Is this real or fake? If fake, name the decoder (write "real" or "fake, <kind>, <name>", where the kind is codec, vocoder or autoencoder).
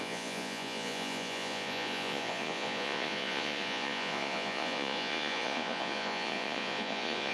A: fake, vocoder, Vocos